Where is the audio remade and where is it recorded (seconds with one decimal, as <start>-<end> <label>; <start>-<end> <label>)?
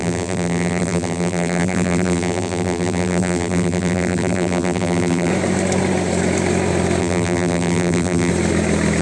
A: 0.0-5.3 remade; 5.3-7.0 recorded; 7.0-8.3 remade; 8.3-9.0 recorded